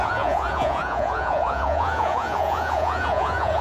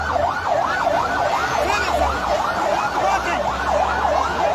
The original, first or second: second